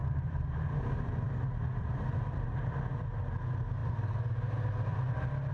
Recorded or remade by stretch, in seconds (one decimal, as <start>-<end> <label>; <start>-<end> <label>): 0.0-2.7 remade; 2.7-5.5 recorded